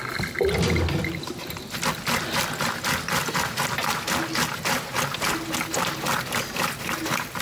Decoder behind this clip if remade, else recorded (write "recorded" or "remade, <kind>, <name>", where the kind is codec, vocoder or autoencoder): recorded